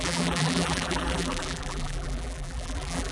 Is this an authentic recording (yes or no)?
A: no